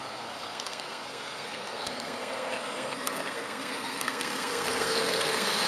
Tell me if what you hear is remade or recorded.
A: remade